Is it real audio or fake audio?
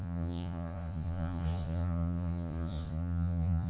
fake